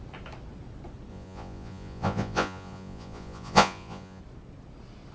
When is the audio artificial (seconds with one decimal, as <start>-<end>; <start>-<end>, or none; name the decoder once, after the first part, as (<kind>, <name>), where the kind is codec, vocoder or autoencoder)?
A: 1.1-4.2 (vocoder, Vocos)